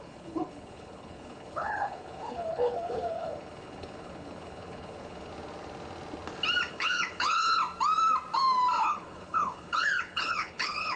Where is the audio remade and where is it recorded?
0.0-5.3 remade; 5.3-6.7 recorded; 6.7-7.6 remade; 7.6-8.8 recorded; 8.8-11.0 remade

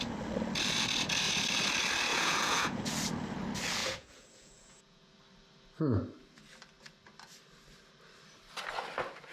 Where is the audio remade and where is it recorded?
0.0-2.1 recorded; 2.1-2.8 remade; 2.8-3.8 recorded; 3.8-5.1 remade; 5.1-9.3 recorded

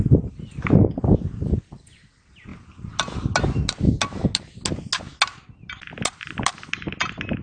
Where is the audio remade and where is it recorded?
0.0-7.4 recorded

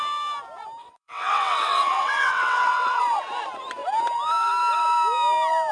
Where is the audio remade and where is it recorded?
0.0-0.8 recorded; 0.8-3.0 remade; 3.0-5.7 recorded

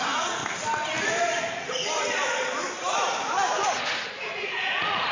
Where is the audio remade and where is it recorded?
0.0-0.4 remade; 0.4-1.4 recorded; 1.4-1.8 remade; 1.8-4.2 recorded; 4.2-5.1 remade